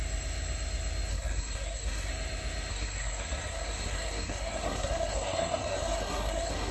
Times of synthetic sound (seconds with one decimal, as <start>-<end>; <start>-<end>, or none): 1.1-2.1; 2.7-6.7